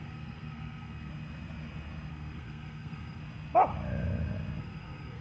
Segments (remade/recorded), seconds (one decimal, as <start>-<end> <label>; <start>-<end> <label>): 0.0-1.1 remade; 1.1-2.1 recorded; 2.1-3.2 remade; 3.2-4.6 recorded; 4.6-5.2 remade